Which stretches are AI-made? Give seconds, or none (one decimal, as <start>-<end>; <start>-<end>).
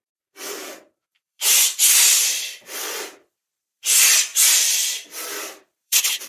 0.0-3.8; 4.3-6.3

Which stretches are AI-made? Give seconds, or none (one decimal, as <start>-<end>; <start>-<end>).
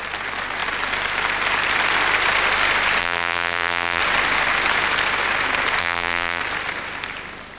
3.0-4.0; 5.8-6.4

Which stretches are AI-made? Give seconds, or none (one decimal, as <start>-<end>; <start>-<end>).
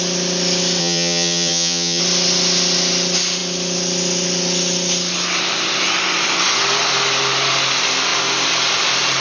0.8-2.0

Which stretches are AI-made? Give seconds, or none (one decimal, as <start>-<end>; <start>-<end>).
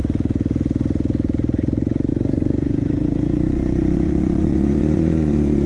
2.1-5.7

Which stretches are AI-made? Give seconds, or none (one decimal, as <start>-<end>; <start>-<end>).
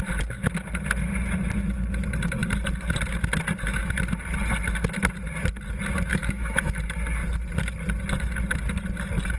6.1-6.8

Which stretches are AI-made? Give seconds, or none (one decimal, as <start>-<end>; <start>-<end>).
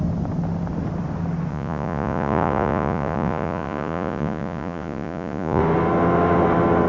1.5-5.6